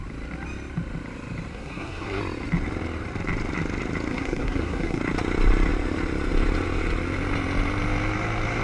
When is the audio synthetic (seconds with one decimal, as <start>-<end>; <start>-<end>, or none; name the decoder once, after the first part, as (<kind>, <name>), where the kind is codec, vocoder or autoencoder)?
1.5-2.2 (codec, SNAC); 4.1-5.0